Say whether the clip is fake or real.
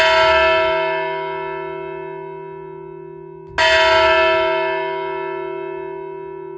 real